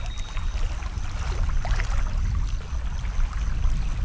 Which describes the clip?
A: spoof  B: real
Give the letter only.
B